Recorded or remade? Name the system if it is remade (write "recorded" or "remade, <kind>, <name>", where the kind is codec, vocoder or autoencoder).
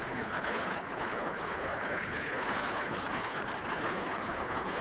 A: remade, codec, HILCodec